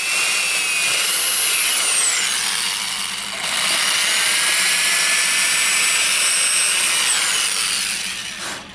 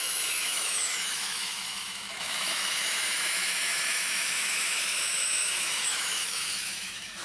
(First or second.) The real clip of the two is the first